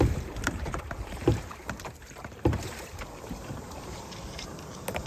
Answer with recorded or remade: remade